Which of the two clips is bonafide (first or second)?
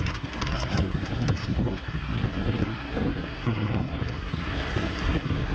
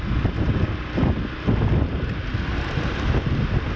second